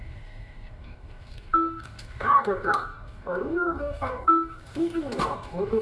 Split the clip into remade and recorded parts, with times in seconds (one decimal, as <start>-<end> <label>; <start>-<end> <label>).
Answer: 0.0-5.8 remade